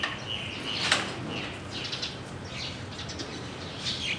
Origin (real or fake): real